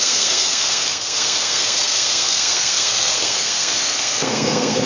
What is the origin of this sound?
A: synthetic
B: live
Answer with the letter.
A